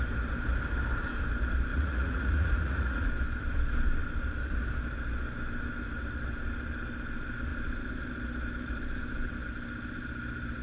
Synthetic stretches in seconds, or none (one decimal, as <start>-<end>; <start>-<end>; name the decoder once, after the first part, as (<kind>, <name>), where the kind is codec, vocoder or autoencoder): 1.7-3.1 (vocoder, Vocos)